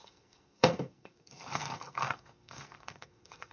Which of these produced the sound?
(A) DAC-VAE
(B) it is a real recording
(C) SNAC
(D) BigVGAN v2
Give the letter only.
C